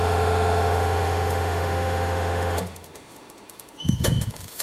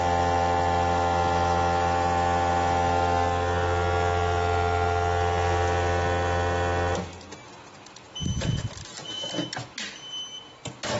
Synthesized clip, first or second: first